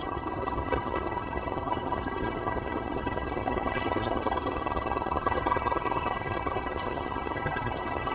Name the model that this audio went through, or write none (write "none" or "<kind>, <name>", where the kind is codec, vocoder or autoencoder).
vocoder, HiFi-GAN